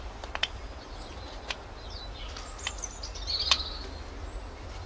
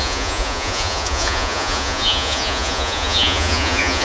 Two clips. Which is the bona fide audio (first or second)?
first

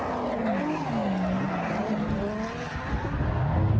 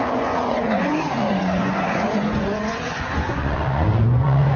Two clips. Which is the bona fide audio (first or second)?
first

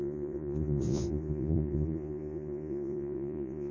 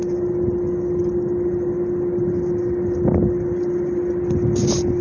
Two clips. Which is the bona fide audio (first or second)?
second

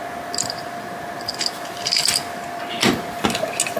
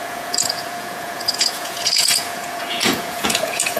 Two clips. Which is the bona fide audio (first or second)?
first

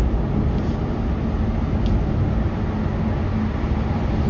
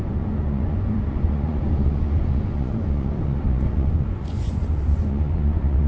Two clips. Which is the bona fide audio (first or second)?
first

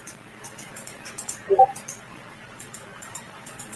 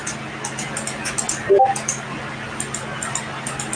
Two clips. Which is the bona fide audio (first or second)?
second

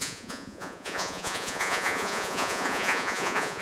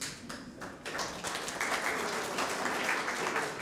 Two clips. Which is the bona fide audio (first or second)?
second